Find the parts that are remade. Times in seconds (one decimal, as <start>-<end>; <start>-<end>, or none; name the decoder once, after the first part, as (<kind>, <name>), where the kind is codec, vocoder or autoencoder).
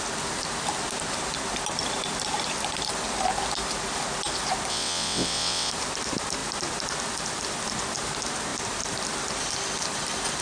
4.7-5.7 (vocoder, WaveNeXt)